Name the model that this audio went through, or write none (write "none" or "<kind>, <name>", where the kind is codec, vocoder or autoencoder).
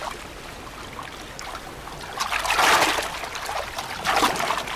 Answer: none